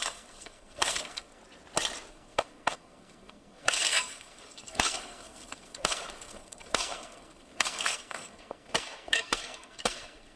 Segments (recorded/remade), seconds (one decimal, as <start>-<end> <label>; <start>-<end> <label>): 0.0-1.4 remade; 1.4-2.1 recorded; 2.1-10.4 remade